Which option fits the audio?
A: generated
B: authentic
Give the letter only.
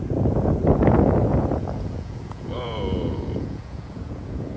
A